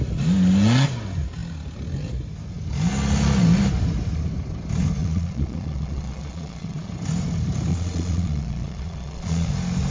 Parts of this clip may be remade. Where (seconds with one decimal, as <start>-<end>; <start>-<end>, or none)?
5.0-6.9; 7.7-9.5